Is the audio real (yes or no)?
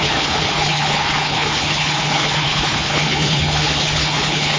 no